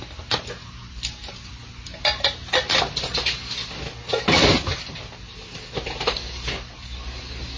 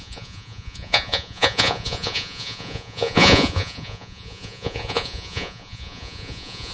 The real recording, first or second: first